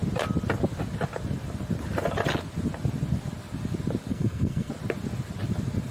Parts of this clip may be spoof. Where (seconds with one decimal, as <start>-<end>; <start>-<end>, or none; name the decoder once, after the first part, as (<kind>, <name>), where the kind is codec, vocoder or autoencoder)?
4.1-4.7 (codec, SNAC)